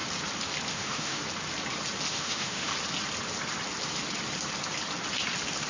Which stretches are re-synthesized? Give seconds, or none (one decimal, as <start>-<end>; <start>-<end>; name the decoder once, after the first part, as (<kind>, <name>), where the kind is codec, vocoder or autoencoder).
0.7-1.2 (autoencoder, DAC-VAE); 2.1-2.7